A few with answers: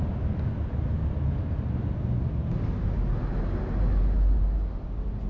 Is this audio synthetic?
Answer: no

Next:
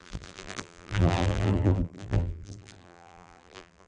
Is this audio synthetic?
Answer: yes